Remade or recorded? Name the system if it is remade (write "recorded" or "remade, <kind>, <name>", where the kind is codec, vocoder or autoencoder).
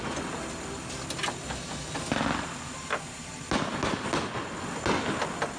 recorded